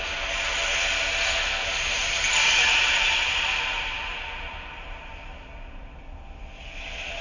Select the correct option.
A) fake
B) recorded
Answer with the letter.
B